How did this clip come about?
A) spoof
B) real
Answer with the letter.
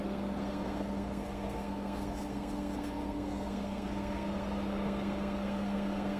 A